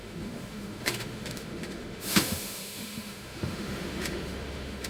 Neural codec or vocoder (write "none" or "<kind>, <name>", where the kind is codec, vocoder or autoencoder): autoencoder, DAC-VAE